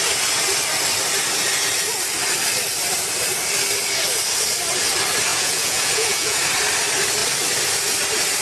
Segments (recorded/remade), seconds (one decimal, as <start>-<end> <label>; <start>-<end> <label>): 0.0-5.3 recorded; 5.3-6.4 remade; 6.4-8.4 recorded